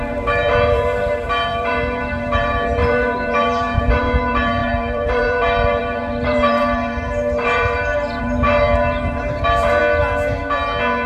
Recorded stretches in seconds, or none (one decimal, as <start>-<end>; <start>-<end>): 9.8-11.1